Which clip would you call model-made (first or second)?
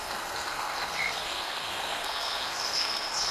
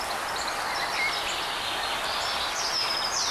first